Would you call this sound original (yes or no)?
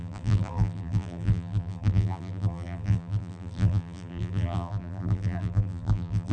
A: no